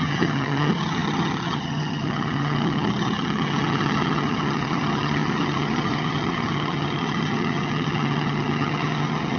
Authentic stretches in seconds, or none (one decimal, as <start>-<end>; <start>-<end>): none